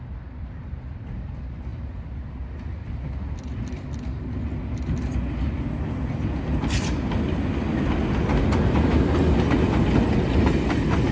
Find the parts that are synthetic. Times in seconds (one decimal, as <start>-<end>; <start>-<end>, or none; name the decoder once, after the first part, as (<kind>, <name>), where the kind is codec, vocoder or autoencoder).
none